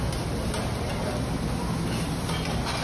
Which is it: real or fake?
real